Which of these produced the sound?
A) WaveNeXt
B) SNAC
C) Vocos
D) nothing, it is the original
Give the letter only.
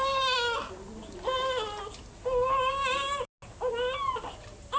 D